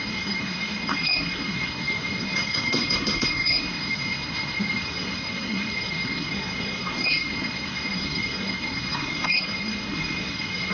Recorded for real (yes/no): no